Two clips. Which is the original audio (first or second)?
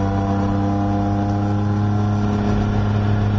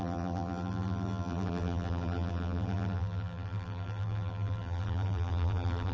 first